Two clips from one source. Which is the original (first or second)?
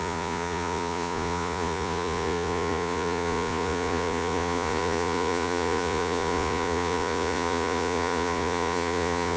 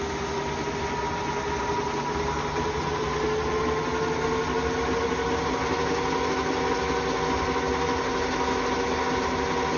second